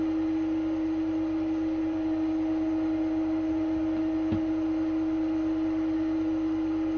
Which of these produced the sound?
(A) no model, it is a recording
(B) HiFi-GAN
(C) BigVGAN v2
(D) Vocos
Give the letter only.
A